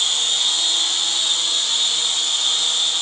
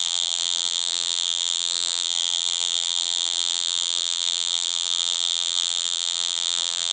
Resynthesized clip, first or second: second